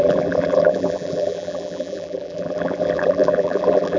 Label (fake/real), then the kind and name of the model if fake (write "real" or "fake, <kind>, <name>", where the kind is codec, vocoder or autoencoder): fake, vocoder, BigVGAN v2